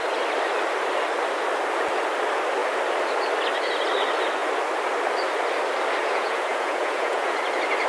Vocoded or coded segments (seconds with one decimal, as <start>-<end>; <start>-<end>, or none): 6.0-7.4